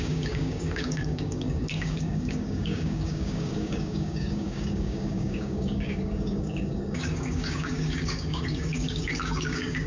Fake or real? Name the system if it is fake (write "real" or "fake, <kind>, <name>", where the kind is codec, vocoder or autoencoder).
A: fake, codec, DAC